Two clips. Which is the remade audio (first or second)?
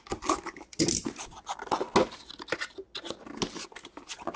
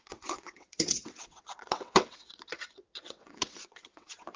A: second